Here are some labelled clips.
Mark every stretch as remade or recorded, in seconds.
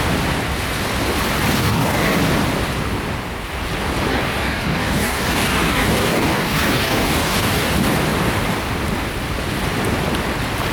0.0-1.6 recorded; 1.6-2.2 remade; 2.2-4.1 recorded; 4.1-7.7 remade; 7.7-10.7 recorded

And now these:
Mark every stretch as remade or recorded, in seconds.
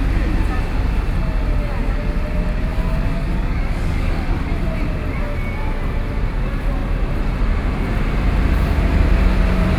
0.0-2.7 recorded; 2.7-4.4 remade; 4.4-9.8 recorded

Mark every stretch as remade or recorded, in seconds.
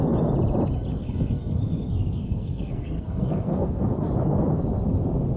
0.0-0.9 recorded; 0.9-4.1 remade; 4.1-5.4 recorded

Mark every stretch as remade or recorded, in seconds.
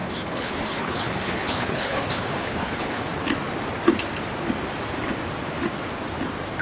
0.0-3.0 remade; 3.0-6.6 recorded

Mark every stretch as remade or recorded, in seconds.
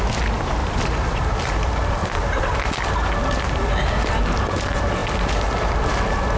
0.0-0.6 recorded; 0.6-1.3 remade; 1.3-2.0 recorded; 2.0-2.7 remade; 2.7-6.4 recorded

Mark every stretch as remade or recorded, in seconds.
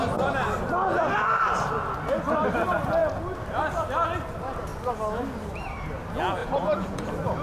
0.0-6.4 recorded; 6.4-7.0 remade; 7.0-7.4 recorded